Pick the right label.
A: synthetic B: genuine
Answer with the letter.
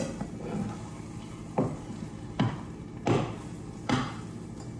B